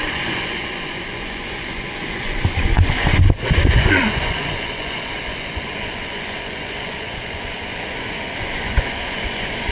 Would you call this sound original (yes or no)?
no